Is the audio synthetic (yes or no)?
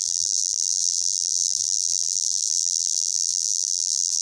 yes